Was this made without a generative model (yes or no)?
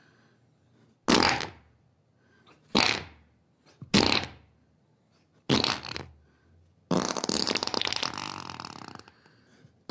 yes